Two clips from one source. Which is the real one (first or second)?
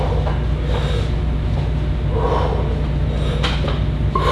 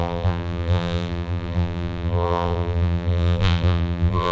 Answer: first